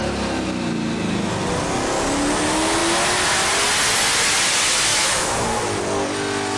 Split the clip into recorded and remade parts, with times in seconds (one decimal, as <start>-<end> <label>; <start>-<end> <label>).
0.0-4.9 recorded; 4.9-5.6 remade; 5.6-6.6 recorded